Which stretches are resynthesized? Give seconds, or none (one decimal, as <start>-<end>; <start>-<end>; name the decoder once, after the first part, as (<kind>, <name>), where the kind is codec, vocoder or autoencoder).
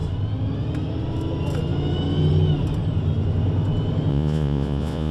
4.1-5.1 (vocoder, Vocos)